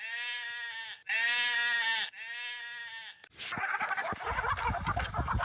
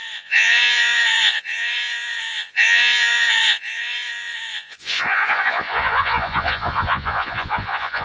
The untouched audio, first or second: first